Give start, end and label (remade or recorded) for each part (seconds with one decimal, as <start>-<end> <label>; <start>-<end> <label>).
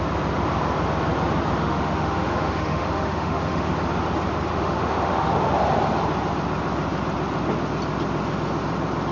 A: 0.0-1.6 recorded; 1.6-3.7 remade; 3.7-4.5 recorded; 4.5-5.3 remade; 5.3-9.1 recorded